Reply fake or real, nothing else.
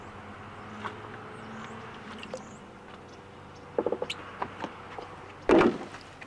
real